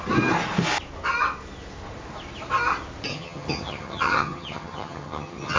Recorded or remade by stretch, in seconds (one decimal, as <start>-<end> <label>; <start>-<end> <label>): 0.0-3.1 recorded; 3.1-5.6 remade